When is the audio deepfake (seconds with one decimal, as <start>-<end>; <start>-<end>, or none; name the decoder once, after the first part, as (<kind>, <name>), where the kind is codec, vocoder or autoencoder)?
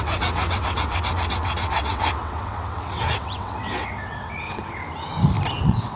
0.0-4.8 (vocoder, WaveNeXt); 5.6-6.0